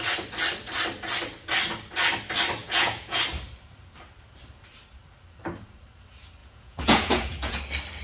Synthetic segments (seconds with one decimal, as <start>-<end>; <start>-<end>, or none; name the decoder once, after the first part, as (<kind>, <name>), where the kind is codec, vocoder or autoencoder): 2.6-3.2 (vocoder, Vocos); 6.4-7.6